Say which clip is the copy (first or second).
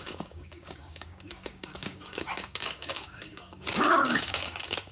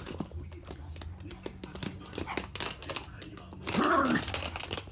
first